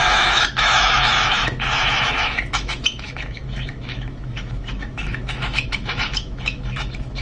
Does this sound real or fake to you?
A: fake